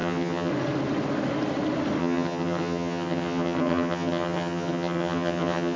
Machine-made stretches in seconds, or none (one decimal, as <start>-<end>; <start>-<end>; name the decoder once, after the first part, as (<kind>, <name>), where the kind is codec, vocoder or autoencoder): 0.0-0.5 (vocoder, HiFi-GAN); 2.0-5.8